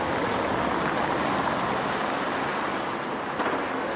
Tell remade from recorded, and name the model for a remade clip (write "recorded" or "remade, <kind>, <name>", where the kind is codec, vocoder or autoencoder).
recorded